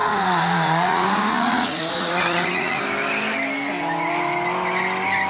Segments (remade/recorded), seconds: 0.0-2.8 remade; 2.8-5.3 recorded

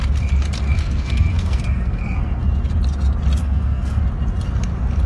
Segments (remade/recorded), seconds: 0.0-0.7 recorded; 0.7-2.4 remade; 2.4-3.4 recorded; 3.4-4.0 remade; 4.0-5.1 recorded

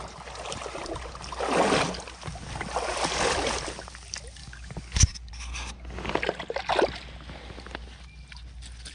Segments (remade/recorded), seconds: 0.0-4.4 recorded; 4.4-5.3 remade; 5.3-8.9 recorded

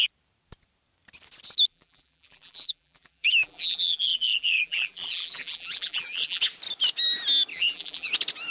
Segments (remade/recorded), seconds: 0.0-1.7 recorded; 1.7-6.4 remade; 6.4-7.5 recorded; 7.5-8.1 remade; 8.1-8.5 recorded